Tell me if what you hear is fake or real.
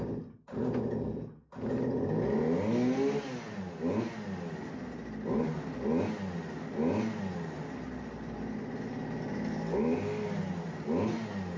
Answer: real